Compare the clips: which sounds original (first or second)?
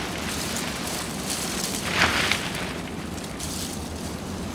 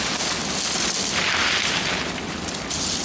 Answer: second